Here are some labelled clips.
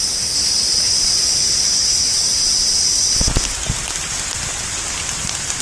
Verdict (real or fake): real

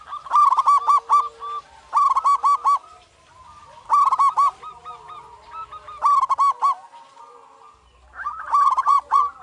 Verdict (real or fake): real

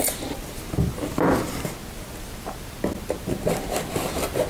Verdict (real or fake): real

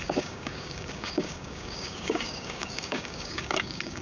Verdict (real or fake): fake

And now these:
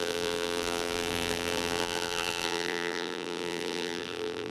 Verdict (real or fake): fake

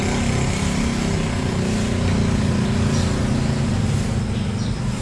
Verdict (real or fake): real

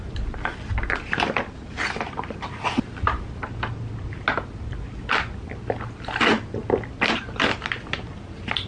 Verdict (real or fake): real